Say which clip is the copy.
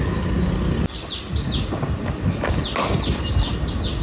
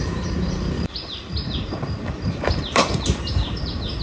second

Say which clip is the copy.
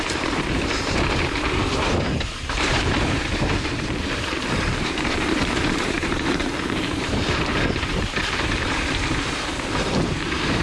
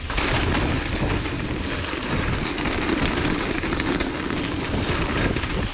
first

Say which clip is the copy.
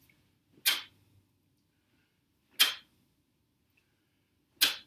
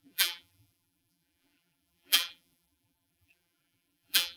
second